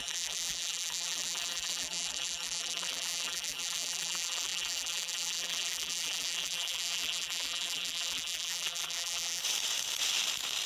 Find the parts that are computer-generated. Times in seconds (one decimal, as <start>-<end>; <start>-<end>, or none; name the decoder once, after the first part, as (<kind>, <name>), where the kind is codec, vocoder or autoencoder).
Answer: 0.0-9.4 (vocoder, BigVGAN v2)